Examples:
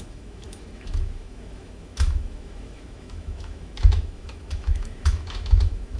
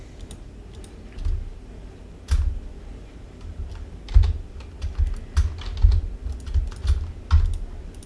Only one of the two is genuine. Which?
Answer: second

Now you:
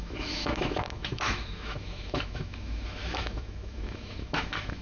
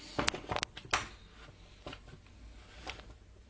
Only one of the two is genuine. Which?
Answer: second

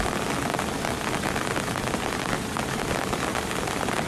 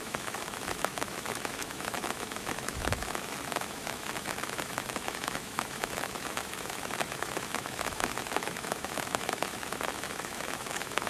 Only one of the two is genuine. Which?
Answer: first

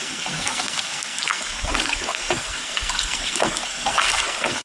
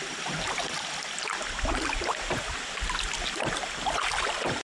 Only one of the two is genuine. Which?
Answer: second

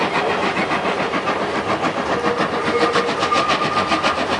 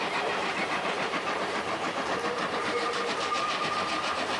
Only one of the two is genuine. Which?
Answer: first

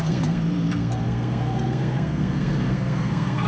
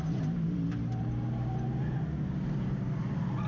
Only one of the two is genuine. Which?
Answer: second